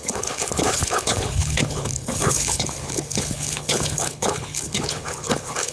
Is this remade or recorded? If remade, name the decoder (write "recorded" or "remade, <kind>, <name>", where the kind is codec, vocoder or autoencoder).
remade, codec, HILCodec